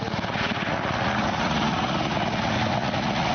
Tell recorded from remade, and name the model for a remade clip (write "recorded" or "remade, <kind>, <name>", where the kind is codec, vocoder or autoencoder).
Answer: remade, vocoder, Vocos